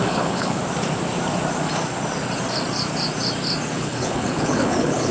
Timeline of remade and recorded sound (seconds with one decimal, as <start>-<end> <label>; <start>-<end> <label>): 0.0-0.6 remade; 0.6-3.7 recorded; 3.7-5.1 remade